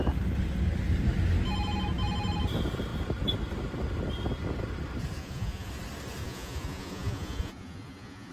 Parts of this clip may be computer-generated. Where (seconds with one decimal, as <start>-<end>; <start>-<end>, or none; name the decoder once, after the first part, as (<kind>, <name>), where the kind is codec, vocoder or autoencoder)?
5.2-5.7 (vocoder, Vocos); 6.2-8.3